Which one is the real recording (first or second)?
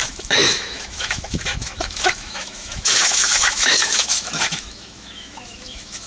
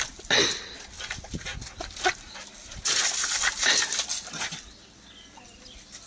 second